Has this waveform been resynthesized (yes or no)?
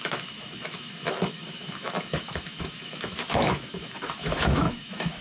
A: yes